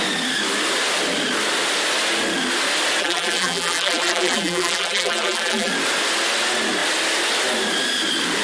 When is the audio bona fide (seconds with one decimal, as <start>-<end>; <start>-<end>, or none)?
0.0-3.0; 5.7-8.4